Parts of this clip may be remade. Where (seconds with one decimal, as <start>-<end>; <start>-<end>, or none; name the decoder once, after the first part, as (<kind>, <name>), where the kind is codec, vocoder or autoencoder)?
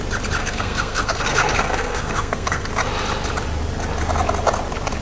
0.4-2.7 (codec, SNAC)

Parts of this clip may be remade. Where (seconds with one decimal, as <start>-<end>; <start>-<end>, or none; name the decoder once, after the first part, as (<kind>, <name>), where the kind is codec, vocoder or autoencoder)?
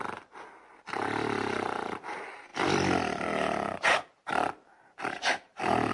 none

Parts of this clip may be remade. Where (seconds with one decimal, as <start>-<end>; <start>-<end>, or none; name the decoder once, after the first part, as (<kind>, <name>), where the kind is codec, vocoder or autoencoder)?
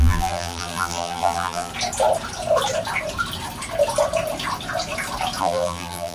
0.0-1.7 (vocoder, BigVGAN v2); 5.4-6.1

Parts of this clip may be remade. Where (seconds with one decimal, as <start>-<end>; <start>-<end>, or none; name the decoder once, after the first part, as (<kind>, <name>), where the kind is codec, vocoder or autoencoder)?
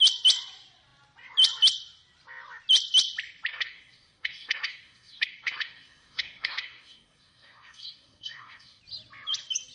3.5-8.8 (codec, SNAC)